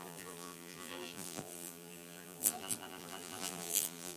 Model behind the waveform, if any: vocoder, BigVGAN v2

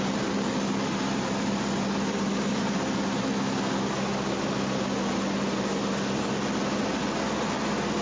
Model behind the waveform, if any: none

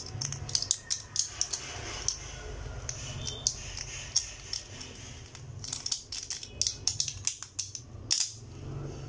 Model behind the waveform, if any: none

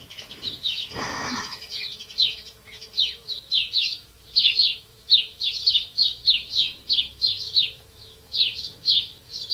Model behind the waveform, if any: autoencoder, DAC-VAE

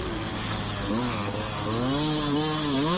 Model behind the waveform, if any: none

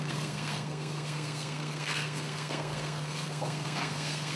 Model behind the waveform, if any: codec, SNAC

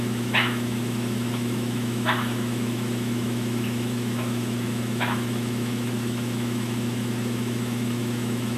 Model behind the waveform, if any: autoencoder, DAC-VAE